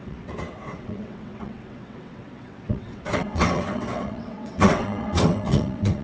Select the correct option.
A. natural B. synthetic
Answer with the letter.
B